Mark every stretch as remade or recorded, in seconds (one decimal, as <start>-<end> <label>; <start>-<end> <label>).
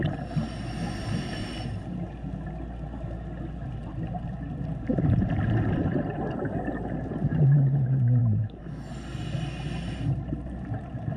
0.0-8.2 recorded; 8.2-8.9 remade; 8.9-11.2 recorded